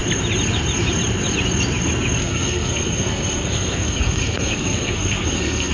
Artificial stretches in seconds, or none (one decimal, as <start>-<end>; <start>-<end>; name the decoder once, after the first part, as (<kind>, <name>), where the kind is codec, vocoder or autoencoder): 2.2-5.7 (codec, SNAC)